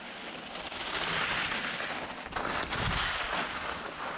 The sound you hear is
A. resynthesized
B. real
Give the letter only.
B